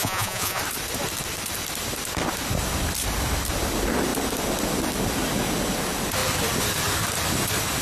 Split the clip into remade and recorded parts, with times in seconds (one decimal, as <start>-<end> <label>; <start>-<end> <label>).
0.0-0.6 remade; 0.6-7.8 recorded